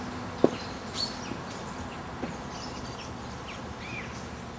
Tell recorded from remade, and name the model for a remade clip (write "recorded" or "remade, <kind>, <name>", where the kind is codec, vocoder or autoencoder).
recorded